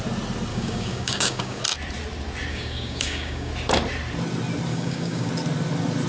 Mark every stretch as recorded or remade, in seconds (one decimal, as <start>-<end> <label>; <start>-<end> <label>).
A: 0.0-0.5 recorded; 0.5-1.6 remade; 1.6-2.5 recorded; 2.5-3.5 remade; 3.5-4.7 recorded; 4.7-5.3 remade; 5.3-6.1 recorded